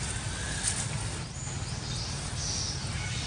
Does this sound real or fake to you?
real